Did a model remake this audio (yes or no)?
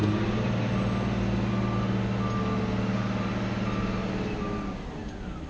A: no